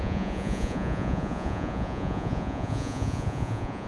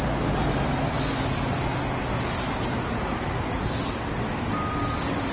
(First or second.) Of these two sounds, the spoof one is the first